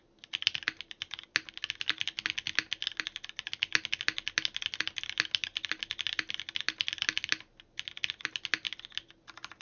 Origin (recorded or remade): recorded